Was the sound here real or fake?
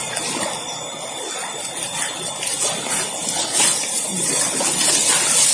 real